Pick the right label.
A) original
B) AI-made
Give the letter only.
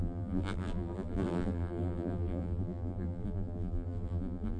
B